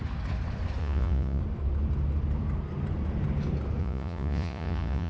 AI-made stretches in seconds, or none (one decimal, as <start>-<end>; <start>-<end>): 0.8-1.4; 3.8-5.1